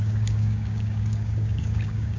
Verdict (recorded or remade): remade